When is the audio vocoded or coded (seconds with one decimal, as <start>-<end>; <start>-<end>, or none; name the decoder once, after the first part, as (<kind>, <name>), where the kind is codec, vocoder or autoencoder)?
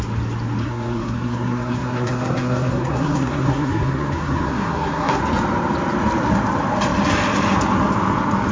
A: 0.6-5.2 (codec, SNAC)